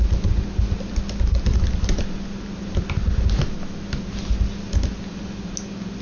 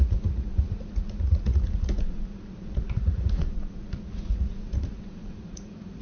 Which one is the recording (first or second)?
first